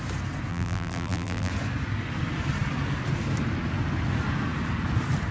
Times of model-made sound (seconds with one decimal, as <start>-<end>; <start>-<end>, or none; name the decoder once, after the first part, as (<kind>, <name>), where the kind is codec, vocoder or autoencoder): 0.5-1.5 (vocoder, BigVGAN v2)

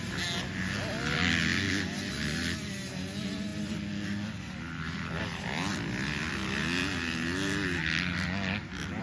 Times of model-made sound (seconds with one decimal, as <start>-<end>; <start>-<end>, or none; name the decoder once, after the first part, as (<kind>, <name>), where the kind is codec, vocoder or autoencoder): none

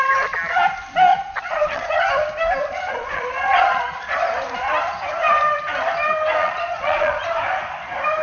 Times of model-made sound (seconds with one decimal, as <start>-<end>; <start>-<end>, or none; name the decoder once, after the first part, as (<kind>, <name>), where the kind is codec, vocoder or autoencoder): 1.1-2.0 (vocoder, Vocos); 2.7-4.2; 6.4-7.2

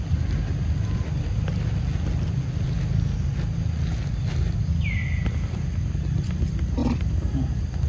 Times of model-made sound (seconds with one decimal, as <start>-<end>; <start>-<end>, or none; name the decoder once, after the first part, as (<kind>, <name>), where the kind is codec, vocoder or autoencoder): none

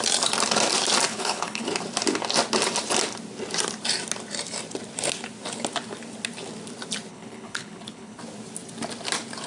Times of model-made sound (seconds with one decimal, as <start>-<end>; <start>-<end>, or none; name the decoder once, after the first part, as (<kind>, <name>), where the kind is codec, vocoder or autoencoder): 1.1-1.7 (codec, HILCodec); 7.1-8.2

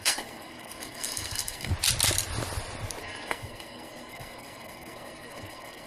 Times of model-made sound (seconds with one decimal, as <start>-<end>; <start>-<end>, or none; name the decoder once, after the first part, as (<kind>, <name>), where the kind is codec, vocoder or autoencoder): 0.0-1.7 (codec, SNAC); 3.0-5.9

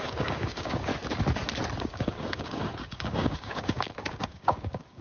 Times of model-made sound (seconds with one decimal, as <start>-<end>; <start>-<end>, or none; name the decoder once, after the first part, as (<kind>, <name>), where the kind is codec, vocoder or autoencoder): 0.0-0.9 (codec, DAC); 1.8-5.0

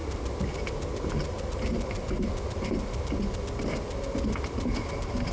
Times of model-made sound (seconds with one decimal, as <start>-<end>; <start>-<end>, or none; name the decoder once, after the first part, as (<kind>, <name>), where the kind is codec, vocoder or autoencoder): none